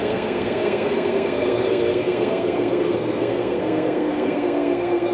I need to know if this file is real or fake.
fake